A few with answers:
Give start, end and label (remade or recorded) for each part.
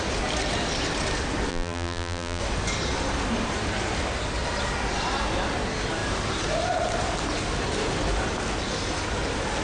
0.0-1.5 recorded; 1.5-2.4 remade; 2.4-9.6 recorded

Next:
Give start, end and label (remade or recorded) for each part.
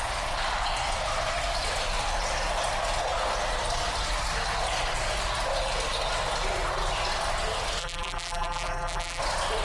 0.0-7.8 recorded; 7.8-9.2 remade; 9.2-9.6 recorded